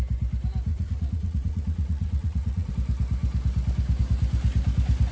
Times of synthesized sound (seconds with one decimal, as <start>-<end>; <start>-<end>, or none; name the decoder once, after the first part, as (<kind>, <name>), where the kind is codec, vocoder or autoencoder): 0.7-2.7 (vocoder, Vocos)

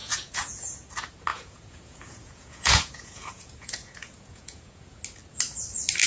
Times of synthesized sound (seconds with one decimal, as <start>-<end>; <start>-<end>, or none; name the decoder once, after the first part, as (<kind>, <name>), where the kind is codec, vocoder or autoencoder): 0.0-0.9 (vocoder, Vocos); 1.3-5.0

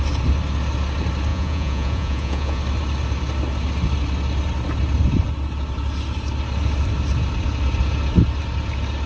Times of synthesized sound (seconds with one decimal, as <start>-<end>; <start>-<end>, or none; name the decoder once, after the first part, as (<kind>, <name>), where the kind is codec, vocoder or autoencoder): 1.3-2.6 (vocoder, Vocos)

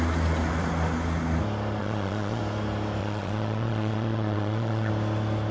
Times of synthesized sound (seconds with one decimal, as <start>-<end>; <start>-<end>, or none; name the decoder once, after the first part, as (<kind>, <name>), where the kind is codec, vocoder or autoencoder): 1.8-2.4 (vocoder, Vocos); 3.0-4.9

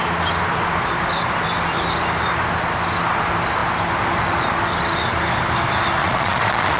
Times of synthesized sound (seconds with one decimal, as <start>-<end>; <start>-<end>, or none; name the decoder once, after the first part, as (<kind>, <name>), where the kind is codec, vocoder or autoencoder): 6.0-6.8 (vocoder, Vocos)

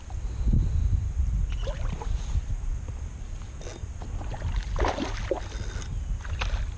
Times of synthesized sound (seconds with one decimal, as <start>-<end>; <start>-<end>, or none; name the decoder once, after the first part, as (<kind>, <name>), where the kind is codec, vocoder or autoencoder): none

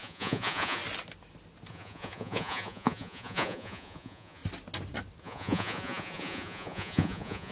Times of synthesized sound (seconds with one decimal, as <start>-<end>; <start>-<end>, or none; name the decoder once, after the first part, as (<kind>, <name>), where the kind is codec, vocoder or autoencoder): 0.0-0.8 (vocoder, Vocos); 1.7-4.4; 5.2-7.5